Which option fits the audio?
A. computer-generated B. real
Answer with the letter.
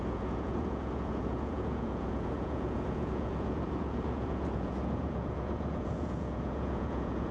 A